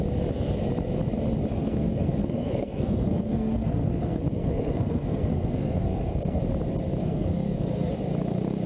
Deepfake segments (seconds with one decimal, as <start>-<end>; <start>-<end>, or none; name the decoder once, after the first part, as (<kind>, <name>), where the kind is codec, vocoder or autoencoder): 1.5-6.4 (codec, SNAC); 7.0-7.9

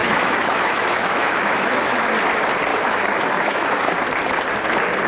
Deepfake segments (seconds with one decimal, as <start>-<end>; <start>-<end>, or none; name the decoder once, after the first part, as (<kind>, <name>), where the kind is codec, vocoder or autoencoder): 0.0-2.0 (autoencoder, DAC-VAE); 2.7-3.9

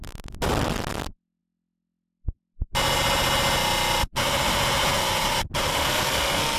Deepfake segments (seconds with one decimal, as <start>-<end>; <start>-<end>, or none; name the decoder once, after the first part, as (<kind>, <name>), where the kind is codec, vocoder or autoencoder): 5.7-6.6 (codec, SNAC)

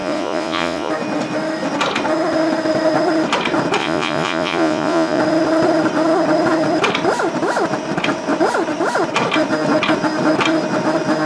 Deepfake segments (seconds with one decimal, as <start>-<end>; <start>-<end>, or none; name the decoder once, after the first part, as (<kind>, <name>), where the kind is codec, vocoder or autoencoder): 0.0-0.9 (vocoder, Vocos); 3.8-5.2

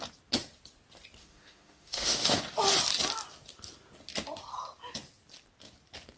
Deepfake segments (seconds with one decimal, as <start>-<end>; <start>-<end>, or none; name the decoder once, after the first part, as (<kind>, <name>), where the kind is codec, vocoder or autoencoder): 1.2-2.4 (autoencoder, DAC-VAE)

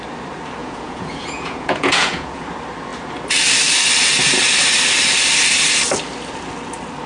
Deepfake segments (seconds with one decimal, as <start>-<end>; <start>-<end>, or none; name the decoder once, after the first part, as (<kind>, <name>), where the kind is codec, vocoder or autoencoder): 0.6-2.4 (vocoder, Vocos)

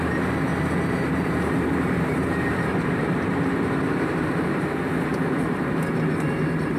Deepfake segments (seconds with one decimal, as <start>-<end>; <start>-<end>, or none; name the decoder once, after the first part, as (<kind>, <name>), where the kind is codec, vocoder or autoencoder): 0.5-4.6 (vocoder, BigVGAN v2); 5.1-6.8

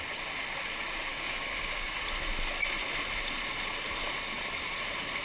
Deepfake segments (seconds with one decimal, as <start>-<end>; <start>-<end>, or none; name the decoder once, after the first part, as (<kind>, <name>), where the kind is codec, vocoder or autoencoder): 1.1-1.9 (codec, DAC)